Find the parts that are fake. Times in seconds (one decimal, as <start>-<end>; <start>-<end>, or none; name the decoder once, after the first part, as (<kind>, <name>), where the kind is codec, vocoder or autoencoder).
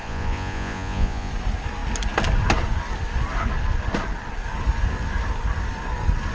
0.0-1.3 (vocoder, Vocos)